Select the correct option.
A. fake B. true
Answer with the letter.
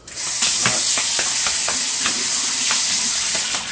B